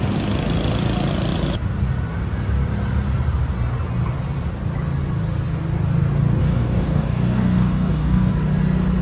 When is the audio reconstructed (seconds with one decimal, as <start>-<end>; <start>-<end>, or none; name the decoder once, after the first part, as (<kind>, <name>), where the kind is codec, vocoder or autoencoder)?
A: 6.4-8.3 (codec, DAC)